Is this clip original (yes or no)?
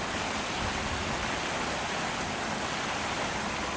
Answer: yes